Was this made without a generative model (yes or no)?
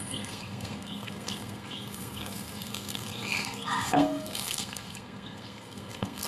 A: no